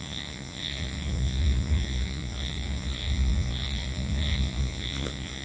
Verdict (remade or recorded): remade